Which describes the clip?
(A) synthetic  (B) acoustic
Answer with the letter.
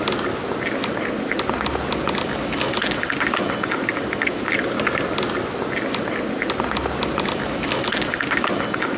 B